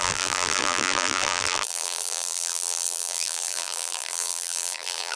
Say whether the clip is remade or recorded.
remade